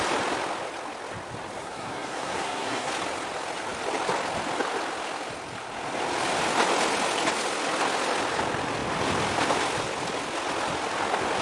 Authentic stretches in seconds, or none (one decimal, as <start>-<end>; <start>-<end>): 0.0-1.6; 2.9-11.4